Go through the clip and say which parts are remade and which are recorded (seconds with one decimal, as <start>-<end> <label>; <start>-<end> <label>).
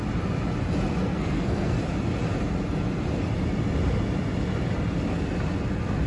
0.0-1.0 recorded; 1.0-1.8 remade; 1.8-6.1 recorded